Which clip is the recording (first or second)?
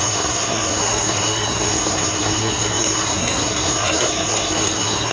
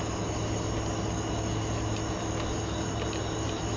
second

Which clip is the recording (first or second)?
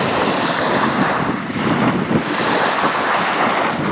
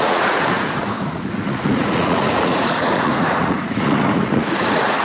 first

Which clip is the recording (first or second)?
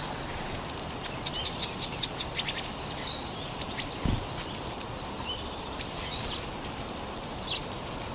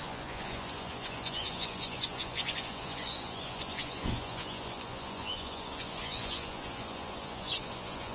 first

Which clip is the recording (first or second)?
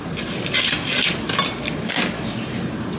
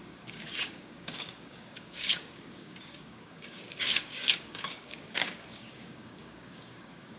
first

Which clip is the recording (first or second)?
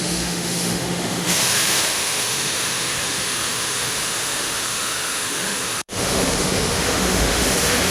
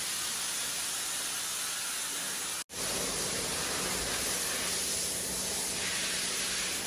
second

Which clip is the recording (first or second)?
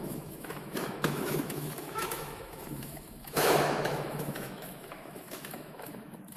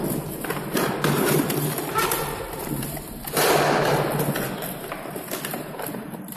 second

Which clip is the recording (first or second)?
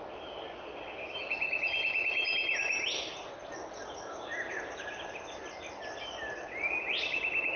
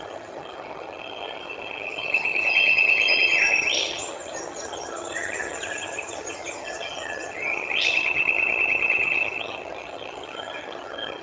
first